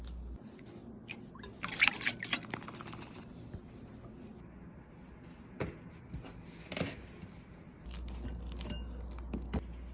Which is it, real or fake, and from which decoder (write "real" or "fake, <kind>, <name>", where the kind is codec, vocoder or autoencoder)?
real